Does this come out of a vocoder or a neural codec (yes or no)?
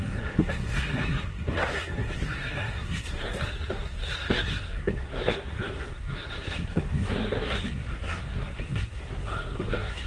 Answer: yes